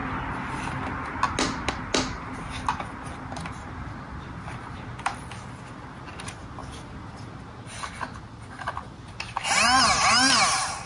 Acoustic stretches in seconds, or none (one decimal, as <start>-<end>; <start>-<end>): 0.0-10.9